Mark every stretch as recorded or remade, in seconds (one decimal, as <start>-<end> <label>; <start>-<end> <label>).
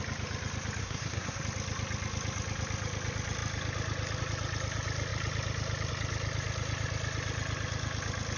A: 0.0-0.8 recorded; 0.8-1.4 remade; 1.4-8.4 recorded